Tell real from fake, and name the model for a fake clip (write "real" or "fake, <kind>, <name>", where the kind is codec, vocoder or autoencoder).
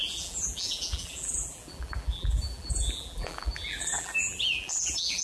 fake, vocoder, BigVGAN v2